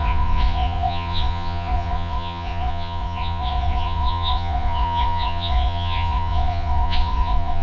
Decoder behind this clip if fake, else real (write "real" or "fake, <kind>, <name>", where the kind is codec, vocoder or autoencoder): fake, vocoder, Vocos